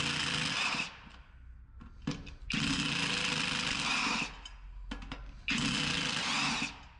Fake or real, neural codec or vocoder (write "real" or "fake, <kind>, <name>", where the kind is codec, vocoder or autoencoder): real